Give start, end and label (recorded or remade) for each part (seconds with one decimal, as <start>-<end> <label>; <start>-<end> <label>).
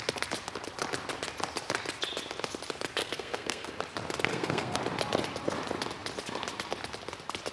0.0-3.0 recorded; 3.0-3.7 remade; 3.7-4.3 recorded; 4.3-4.8 remade; 4.8-7.5 recorded